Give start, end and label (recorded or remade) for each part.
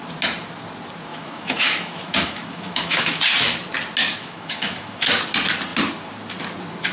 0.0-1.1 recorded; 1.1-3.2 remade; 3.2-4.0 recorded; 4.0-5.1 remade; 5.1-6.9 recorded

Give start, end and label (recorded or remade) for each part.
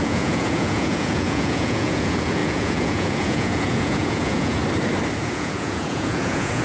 0.0-4.6 remade; 4.6-5.2 recorded; 5.2-6.6 remade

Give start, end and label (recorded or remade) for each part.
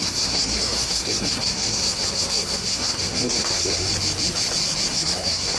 0.0-3.9 remade; 3.9-4.9 recorded; 4.9-5.6 remade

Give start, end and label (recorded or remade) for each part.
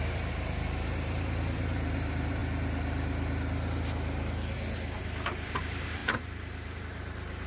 0.0-2.4 remade; 2.4-5.0 recorded; 5.0-7.5 remade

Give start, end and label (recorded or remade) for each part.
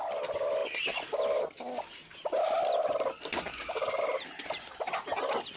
0.0-3.5 recorded; 3.5-4.0 remade; 4.0-5.6 recorded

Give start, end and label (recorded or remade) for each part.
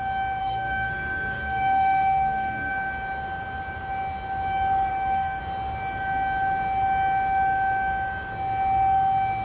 0.0-0.4 recorded; 0.4-2.7 remade; 2.7-4.9 recorded; 4.9-5.4 remade; 5.4-9.4 recorded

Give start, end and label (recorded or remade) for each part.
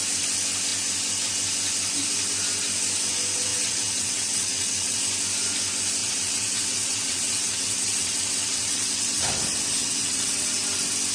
0.0-3.5 recorded; 3.5-5.0 remade; 5.0-6.0 recorded; 6.0-9.4 remade; 9.4-9.8 recorded; 9.8-10.6 remade; 10.6-11.1 recorded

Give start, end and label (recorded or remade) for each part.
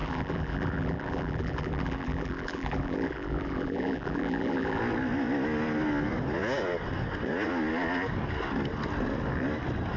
0.0-4.8 remade; 4.8-10.0 recorded